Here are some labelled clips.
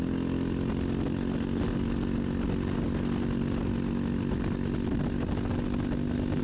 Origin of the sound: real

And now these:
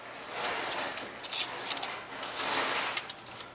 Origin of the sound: real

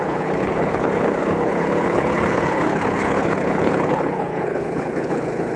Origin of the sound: fake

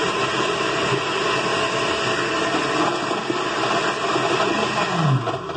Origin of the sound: real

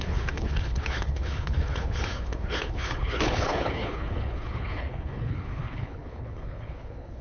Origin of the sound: fake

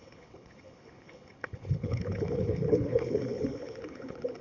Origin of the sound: fake